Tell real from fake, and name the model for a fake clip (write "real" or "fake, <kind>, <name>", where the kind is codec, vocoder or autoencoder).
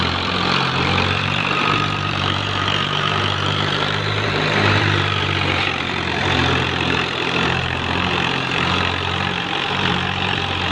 fake, vocoder, BigVGAN v2